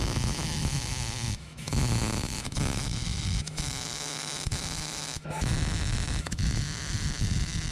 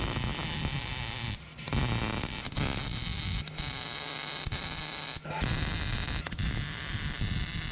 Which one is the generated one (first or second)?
first